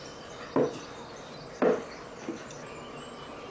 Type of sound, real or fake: real